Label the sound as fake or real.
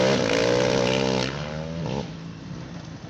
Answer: real